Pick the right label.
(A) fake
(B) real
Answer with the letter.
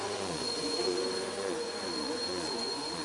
A